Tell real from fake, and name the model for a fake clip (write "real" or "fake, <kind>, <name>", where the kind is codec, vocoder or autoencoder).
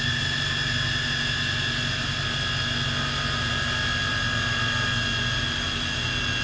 real